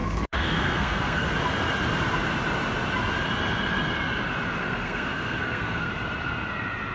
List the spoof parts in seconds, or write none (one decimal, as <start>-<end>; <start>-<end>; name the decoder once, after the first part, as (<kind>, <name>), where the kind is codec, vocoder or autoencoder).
0.0-1.3 (codec, SNAC); 4.6-5.9